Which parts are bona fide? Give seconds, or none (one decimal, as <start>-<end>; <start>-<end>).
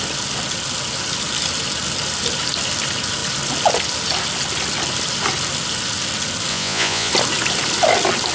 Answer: 0.0-6.5; 7.1-8.3